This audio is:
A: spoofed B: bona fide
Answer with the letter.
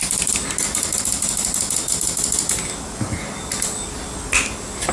B